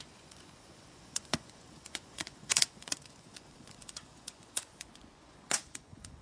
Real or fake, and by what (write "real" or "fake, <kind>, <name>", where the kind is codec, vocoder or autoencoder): fake, vocoder, Vocos